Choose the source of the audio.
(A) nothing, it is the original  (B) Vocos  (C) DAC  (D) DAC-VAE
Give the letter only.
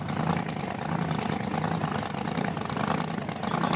A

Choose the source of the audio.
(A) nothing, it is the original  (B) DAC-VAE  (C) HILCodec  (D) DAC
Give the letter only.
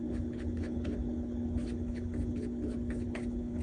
C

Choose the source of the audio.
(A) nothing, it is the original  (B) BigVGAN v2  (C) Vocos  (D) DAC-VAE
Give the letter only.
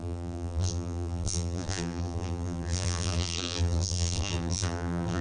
B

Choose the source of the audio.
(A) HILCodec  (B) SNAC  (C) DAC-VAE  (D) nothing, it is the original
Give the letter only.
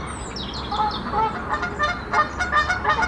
D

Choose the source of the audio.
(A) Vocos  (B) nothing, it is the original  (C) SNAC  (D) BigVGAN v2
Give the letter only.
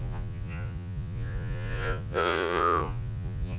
A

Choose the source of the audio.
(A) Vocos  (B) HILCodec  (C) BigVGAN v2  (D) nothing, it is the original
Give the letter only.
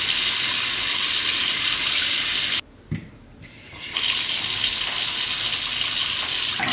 D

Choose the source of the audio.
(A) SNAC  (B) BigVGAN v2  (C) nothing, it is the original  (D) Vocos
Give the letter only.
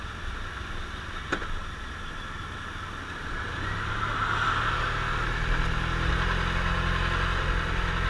C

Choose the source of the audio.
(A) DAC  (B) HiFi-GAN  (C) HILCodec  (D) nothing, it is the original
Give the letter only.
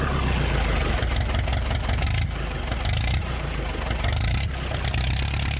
D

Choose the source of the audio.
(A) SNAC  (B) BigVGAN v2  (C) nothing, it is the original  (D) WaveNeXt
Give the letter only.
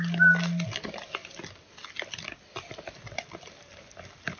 C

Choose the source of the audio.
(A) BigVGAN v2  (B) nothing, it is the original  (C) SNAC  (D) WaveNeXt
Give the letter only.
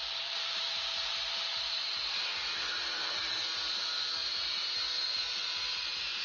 A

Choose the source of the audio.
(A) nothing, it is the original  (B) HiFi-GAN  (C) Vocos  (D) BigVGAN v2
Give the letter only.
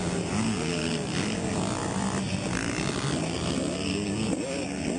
A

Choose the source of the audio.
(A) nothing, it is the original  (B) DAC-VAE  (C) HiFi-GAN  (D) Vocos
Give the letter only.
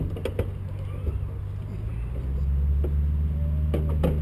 A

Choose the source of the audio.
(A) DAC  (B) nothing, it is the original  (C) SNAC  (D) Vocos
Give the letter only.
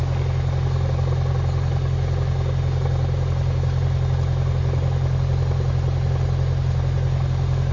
B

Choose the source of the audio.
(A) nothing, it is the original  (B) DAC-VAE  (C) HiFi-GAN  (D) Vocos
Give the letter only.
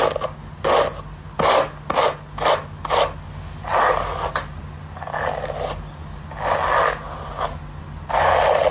A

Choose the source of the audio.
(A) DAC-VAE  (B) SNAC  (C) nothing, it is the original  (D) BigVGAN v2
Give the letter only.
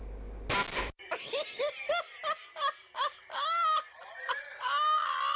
C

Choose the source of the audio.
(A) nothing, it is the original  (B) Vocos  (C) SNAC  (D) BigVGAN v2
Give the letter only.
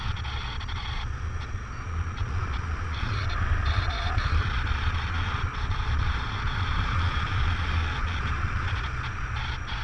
B